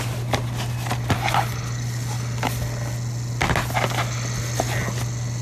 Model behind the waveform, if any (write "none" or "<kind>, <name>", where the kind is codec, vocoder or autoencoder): none